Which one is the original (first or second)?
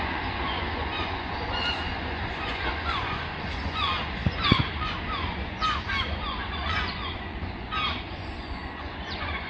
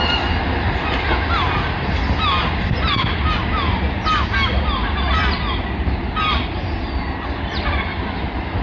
second